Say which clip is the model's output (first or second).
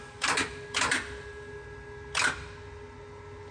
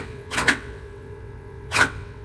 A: second